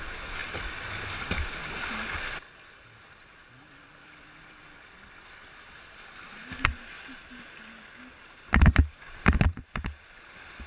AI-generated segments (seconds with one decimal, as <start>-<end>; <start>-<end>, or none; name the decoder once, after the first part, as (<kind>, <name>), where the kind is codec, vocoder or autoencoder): none